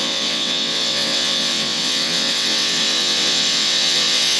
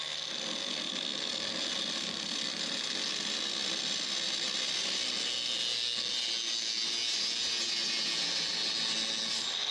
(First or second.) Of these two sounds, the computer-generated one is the first